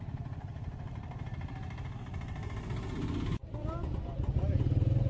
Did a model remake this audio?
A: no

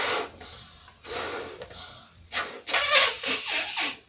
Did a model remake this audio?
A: no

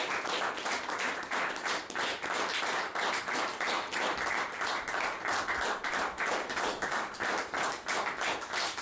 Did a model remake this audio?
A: no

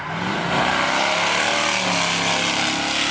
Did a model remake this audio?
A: no